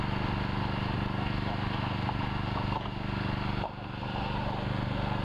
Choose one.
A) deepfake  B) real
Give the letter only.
B